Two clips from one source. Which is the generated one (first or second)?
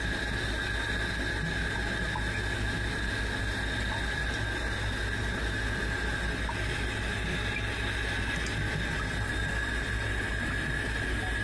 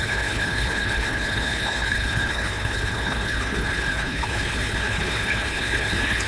second